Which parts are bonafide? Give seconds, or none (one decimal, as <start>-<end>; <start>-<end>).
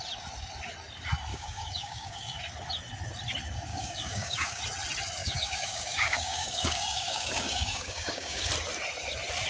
0.0-1.3; 2.4-3.7; 4.6-5.2; 8.5-9.5